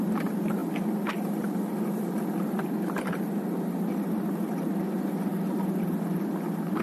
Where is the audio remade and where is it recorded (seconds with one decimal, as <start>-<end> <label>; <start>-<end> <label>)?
0.0-6.8 recorded